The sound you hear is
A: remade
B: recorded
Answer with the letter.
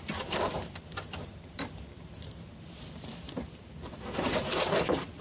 A